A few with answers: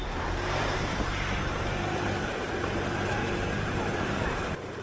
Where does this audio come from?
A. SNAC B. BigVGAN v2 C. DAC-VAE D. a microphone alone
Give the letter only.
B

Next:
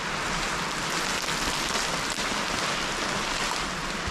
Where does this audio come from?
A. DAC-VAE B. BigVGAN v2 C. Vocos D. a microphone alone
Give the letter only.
D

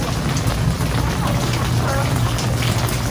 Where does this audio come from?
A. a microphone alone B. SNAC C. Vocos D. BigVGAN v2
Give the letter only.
A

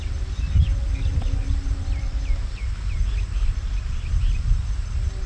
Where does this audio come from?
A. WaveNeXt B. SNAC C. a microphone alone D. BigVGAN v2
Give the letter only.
D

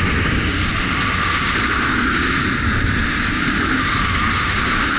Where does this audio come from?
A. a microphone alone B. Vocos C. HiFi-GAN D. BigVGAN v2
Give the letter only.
A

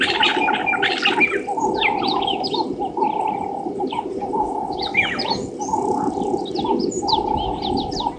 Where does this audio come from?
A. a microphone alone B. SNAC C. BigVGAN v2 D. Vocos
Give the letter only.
C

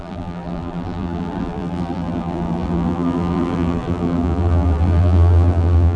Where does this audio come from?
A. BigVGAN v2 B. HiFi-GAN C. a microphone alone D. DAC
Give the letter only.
A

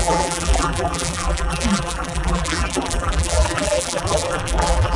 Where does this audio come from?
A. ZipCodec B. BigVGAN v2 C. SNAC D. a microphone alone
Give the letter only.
B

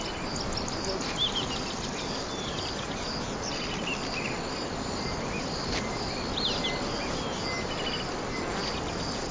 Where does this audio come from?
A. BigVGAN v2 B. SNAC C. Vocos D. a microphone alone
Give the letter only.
D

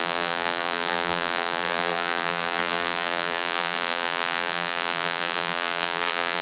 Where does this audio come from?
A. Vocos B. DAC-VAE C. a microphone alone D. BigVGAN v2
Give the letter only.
D